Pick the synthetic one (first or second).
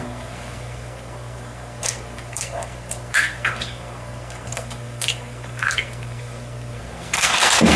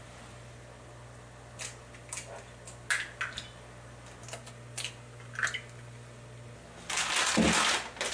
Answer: first